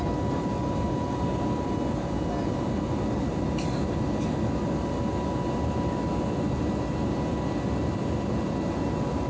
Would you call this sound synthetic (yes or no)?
no